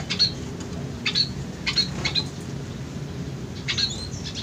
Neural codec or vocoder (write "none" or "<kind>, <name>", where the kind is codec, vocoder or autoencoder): none